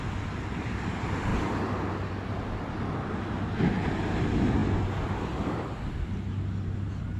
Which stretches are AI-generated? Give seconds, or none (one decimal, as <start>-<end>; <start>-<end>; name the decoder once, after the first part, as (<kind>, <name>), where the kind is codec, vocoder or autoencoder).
none